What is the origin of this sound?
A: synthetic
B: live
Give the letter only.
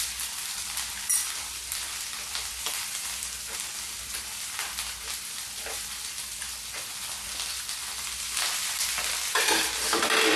A